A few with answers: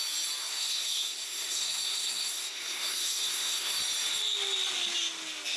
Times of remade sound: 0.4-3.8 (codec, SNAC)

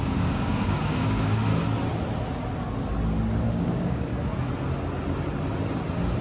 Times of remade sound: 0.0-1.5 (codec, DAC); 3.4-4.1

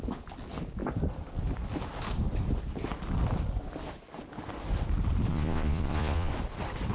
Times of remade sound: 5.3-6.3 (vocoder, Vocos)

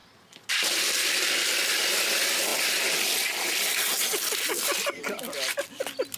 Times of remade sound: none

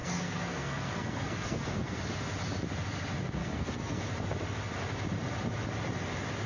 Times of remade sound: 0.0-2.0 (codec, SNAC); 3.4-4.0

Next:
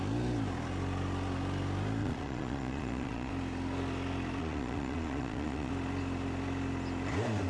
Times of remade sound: 2.0-3.3 (vocoder, Vocos); 4.4-5.7

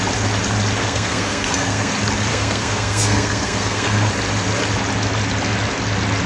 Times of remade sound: 0.8-1.9 (codec, SNAC); 2.3-4.1